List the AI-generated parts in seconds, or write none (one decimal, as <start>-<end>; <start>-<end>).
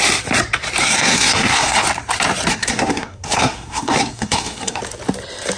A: 0.8-1.8; 2.5-4.8